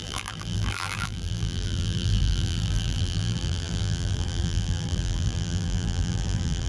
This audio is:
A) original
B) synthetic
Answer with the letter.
B